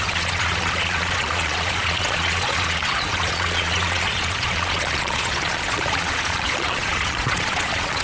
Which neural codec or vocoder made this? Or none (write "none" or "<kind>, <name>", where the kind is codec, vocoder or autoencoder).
vocoder, Vocos